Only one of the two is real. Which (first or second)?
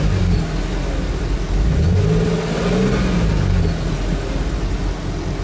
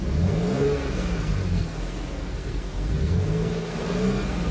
first